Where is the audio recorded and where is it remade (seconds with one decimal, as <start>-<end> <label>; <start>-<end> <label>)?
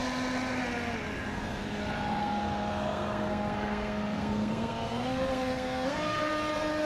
0.0-1.3 recorded; 1.3-1.8 remade; 1.8-2.2 recorded; 2.2-6.3 remade; 6.3-6.9 recorded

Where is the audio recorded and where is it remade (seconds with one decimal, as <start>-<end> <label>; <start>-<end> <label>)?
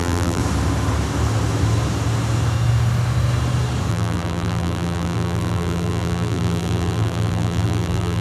0.0-0.4 remade; 0.4-3.9 recorded; 3.9-8.2 remade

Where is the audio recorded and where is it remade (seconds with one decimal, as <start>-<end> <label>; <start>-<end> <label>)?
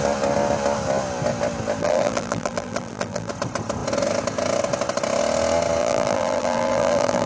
0.0-1.8 recorded; 1.8-3.3 remade; 3.3-5.8 recorded; 5.8-7.3 remade